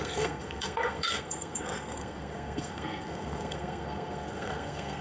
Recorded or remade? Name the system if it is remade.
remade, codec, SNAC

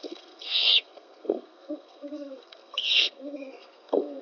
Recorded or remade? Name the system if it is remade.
remade, codec, SNAC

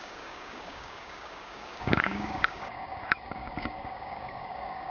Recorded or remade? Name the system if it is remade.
remade, codec, DAC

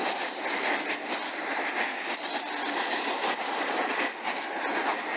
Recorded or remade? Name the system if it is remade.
recorded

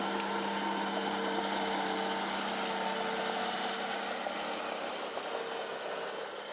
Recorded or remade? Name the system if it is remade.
recorded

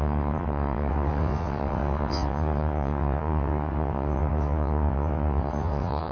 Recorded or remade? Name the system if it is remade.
remade, vocoder, WaveNeXt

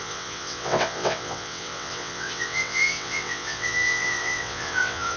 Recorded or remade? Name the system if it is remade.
remade, vocoder, WaveNeXt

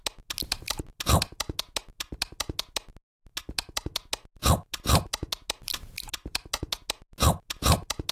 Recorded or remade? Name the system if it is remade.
recorded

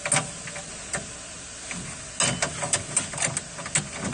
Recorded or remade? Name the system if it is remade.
recorded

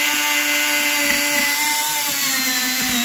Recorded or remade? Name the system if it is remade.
recorded